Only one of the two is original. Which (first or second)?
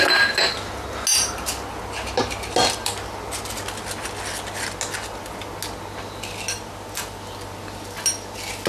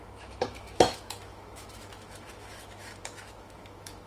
first